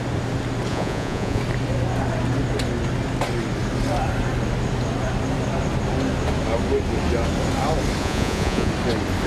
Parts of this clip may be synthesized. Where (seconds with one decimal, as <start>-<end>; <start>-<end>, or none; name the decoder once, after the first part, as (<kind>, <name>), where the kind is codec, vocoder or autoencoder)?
0.7-1.4 (vocoder, Vocos); 8.0-8.7